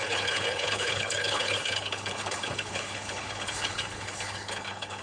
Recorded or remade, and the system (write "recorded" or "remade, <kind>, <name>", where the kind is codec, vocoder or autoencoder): remade, codec, HILCodec